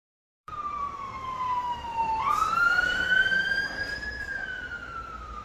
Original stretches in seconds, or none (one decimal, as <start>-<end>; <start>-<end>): 0.8-2.0